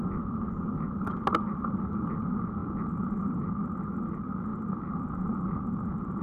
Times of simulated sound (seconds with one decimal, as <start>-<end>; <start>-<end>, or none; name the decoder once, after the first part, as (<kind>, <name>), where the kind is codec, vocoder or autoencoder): none